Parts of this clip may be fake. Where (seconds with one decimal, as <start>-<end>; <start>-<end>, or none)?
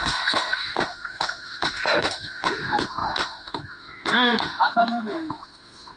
0.0-6.0